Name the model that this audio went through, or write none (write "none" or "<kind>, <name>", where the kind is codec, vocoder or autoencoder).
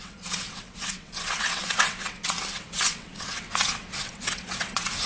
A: vocoder, WaveNeXt